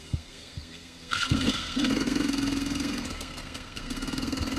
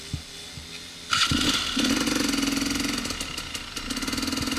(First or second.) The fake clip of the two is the first